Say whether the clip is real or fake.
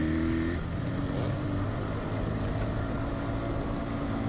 real